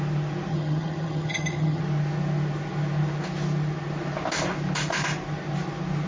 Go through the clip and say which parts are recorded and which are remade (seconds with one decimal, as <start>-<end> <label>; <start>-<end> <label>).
0.0-0.5 recorded; 0.5-1.8 remade; 1.8-6.1 recorded